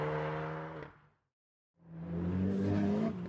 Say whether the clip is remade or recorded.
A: recorded